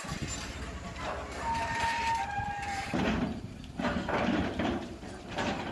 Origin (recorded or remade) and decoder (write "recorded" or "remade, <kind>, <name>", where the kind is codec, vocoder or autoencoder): remade, vocoder, BigVGAN v2